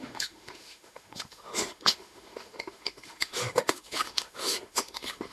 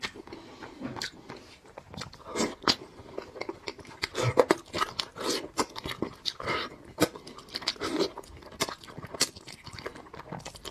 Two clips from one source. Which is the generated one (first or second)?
first